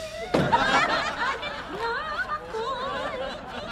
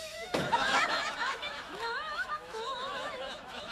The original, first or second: first